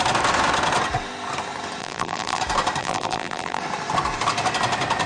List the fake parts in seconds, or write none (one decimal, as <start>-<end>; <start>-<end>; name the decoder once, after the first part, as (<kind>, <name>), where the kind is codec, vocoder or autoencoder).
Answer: 1.8-2.4 (vocoder, BigVGAN v2); 2.8-3.6